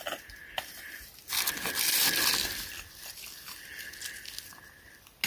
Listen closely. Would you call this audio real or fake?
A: real